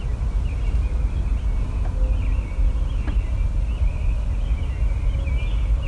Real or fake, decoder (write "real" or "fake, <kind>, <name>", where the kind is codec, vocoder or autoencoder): real